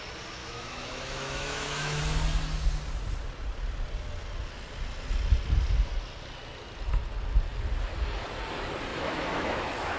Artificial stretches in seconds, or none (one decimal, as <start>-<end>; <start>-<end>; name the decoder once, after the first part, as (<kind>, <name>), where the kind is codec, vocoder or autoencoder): 0.4-2.0 (autoencoder, DAC-VAE); 8.9-10.0